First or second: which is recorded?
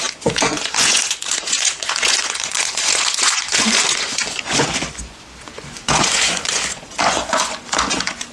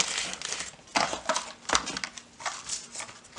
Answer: second